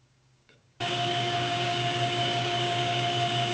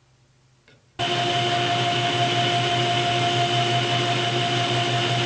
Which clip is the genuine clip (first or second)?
second